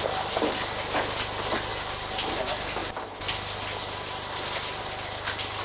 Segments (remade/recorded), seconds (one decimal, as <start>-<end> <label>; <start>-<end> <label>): 0.0-1.7 recorded; 1.7-2.3 remade; 2.3-5.6 recorded